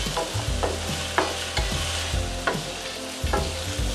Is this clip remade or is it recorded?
recorded